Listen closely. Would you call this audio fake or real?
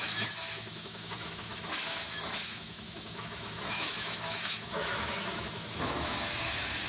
fake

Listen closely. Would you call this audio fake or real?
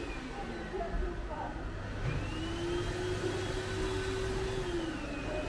real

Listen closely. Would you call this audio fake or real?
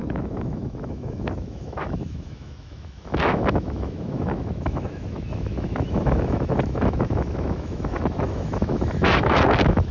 fake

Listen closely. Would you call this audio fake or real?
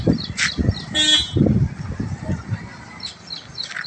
real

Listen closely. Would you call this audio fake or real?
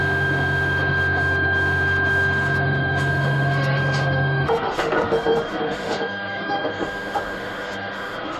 fake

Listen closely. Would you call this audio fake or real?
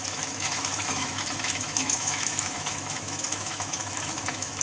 fake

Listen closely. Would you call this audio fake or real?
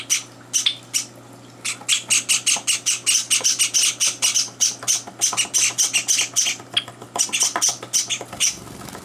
real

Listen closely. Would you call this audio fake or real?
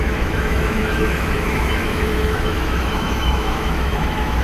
fake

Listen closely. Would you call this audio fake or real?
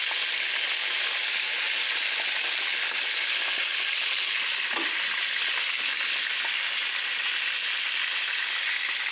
real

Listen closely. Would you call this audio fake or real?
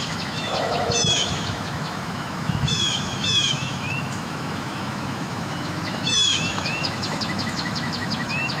fake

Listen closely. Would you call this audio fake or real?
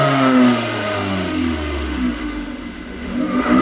fake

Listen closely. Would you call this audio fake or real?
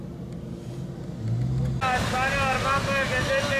real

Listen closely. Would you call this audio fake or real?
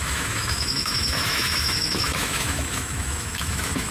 fake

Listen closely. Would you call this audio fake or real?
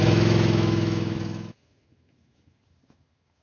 fake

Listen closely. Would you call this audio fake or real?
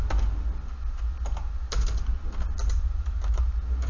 real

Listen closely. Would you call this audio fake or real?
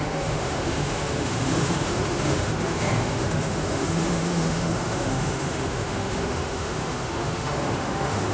fake